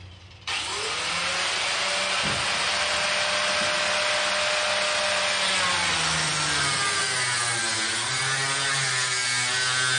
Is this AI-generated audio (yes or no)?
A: no